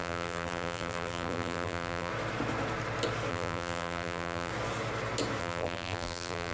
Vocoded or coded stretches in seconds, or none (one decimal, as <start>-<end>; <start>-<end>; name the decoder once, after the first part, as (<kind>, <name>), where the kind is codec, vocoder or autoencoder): 0.0-2.1 (vocoder, BigVGAN v2); 3.3-4.5; 5.4-6.5